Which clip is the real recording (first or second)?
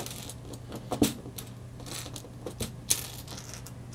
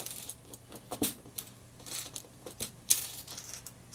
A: first